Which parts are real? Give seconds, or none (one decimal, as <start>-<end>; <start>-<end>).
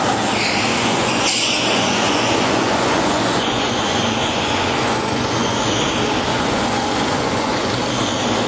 0.0-0.7; 5.8-6.3; 7.7-8.5